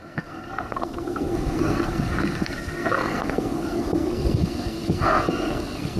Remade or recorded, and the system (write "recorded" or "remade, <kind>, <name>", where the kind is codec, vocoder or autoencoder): remade, codec, SNAC